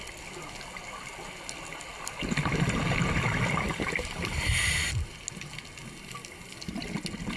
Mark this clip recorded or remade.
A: recorded